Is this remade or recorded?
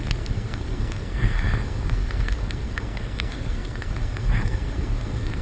remade